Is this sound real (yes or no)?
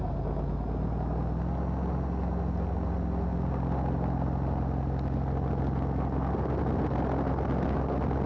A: yes